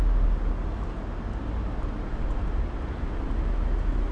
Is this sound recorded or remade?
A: recorded